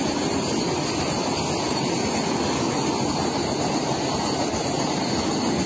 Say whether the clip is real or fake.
real